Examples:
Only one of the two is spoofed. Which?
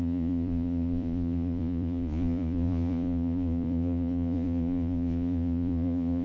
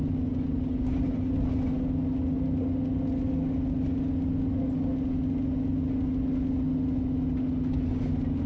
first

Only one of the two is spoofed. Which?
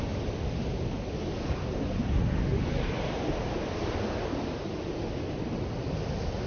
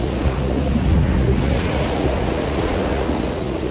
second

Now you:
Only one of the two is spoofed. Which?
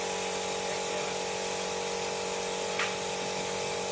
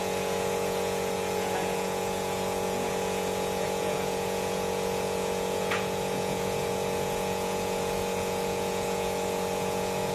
second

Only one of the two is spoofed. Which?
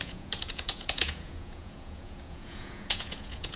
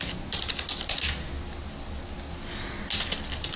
first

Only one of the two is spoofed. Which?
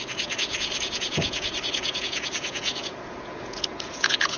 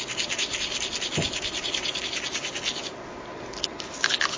first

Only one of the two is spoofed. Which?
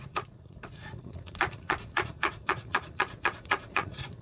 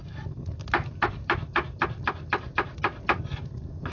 first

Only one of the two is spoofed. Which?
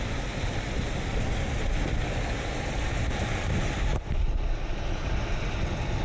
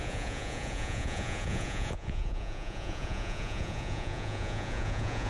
second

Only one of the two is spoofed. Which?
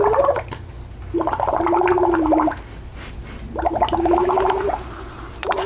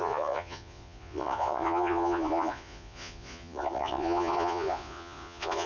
second